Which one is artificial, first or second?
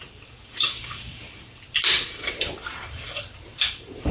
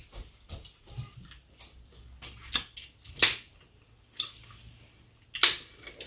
first